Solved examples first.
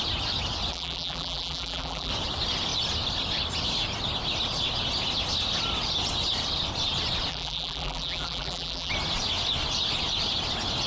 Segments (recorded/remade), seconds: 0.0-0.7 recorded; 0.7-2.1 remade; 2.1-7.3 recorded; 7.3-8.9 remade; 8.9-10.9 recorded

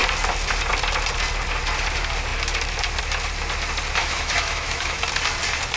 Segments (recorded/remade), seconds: 0.0-4.0 recorded; 4.0-5.0 remade; 5.0-5.8 recorded

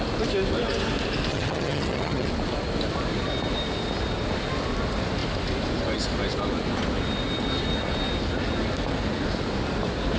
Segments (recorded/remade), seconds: 0.0-1.3 recorded; 1.3-2.3 remade; 2.3-10.2 recorded

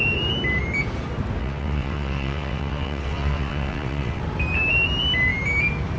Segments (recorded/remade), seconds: 0.0-1.4 recorded; 1.4-4.2 remade; 4.2-6.0 recorded

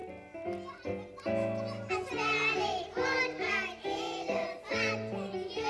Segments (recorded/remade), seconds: 0.0-1.9 recorded; 1.9-5.7 remade

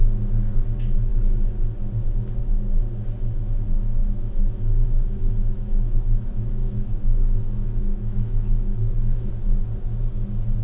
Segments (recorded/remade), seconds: 0.0-4.0 recorded; 4.0-9.3 remade; 9.3-10.6 recorded

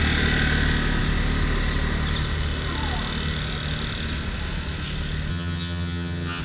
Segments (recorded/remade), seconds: 0.0-5.3 recorded; 5.3-6.4 remade

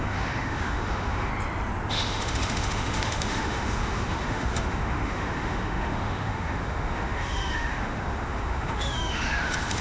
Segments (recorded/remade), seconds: 0.0-1.3 remade; 1.3-1.9 recorded; 1.9-9.8 remade